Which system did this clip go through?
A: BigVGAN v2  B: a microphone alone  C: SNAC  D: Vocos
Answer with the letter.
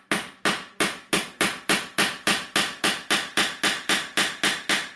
B